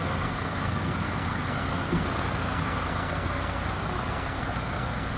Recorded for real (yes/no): no